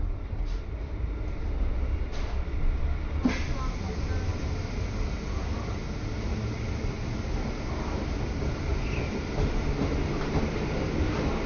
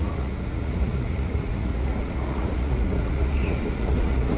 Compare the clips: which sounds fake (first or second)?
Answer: second